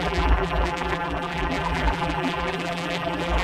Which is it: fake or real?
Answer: fake